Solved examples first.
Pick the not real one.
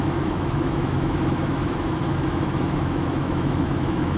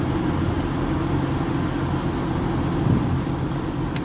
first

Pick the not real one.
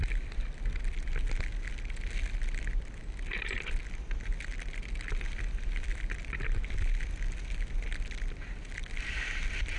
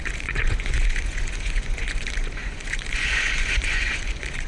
second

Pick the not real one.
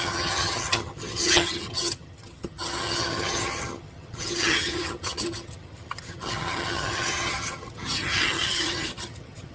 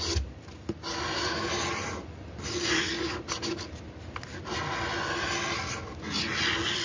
first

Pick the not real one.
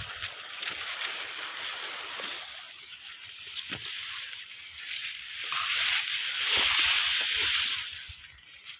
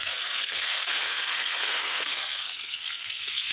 second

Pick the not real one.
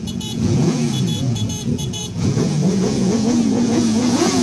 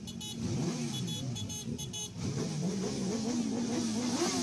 first